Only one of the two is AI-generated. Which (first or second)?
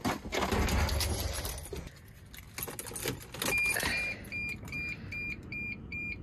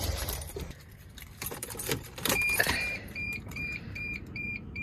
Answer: second